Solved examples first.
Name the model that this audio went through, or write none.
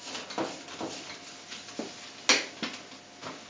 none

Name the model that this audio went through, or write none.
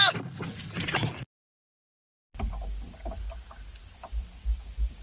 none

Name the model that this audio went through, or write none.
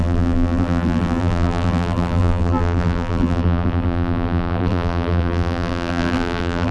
vocoder, BigVGAN v2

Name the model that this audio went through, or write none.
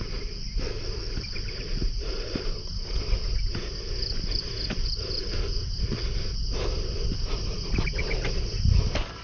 none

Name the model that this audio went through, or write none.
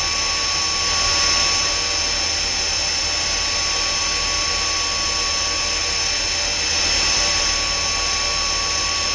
none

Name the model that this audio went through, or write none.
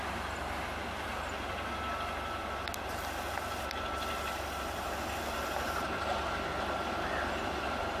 none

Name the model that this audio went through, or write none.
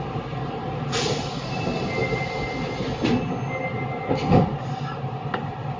none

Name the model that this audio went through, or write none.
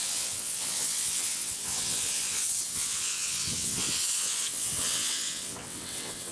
vocoder, WaveNeXt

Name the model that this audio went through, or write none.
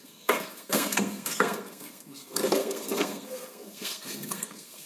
codec, SNAC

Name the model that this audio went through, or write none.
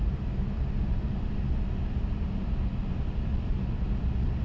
none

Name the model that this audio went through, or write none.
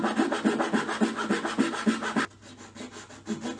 none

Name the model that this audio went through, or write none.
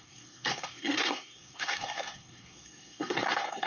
codec, SNAC